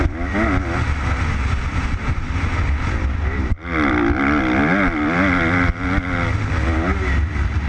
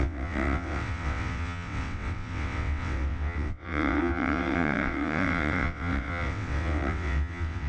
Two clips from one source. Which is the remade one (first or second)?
second